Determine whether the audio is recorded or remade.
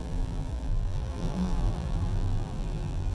remade